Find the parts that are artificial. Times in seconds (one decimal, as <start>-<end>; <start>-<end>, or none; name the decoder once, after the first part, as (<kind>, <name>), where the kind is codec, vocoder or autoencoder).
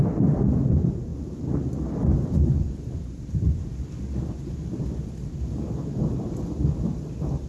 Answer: none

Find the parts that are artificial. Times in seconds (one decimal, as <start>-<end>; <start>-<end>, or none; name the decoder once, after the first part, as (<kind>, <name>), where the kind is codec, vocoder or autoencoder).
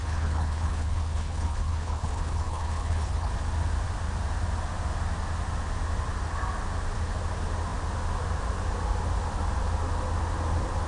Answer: 0.0-3.3 (codec, HILCodec)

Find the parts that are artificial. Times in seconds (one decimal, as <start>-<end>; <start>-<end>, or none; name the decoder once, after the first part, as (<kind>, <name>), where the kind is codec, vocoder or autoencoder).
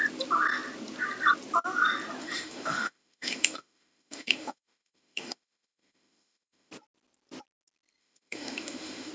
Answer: 2.2-6.7 (autoencoder, DAC-VAE); 8.0-9.1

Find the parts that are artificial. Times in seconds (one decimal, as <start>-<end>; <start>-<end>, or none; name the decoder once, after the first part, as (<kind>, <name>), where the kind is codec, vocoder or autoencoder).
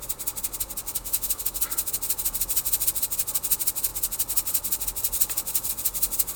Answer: 0.9-1.6 (autoencoder, DAC-VAE)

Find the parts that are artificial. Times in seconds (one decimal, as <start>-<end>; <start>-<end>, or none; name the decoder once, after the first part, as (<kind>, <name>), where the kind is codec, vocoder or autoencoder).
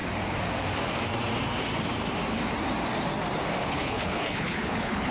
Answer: 3.6-5.1 (codec, HILCodec)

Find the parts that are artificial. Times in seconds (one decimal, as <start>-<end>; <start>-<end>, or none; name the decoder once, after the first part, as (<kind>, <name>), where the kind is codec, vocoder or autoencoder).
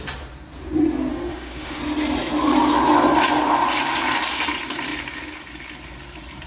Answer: 1.1-1.8 (autoencoder, DAC-VAE)